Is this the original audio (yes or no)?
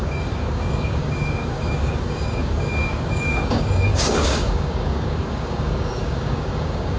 no